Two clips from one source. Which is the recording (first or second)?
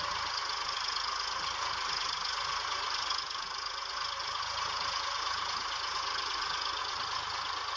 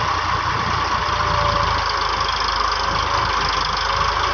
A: second